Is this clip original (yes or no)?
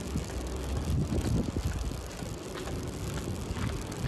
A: yes